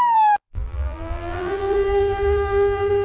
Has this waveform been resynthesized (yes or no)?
yes